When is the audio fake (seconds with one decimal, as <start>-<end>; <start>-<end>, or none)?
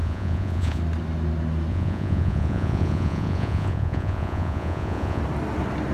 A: 0.0-0.8; 1.7-5.2